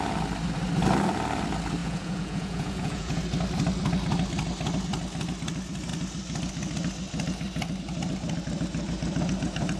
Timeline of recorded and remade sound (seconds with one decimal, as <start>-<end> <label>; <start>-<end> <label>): 0.0-1.8 recorded; 1.8-3.2 remade; 3.2-9.8 recorded